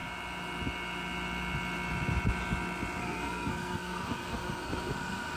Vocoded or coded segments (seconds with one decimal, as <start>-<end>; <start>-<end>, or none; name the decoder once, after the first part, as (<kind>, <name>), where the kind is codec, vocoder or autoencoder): 3.0-5.4 (codec, SNAC)